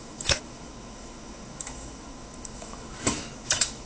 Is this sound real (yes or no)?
no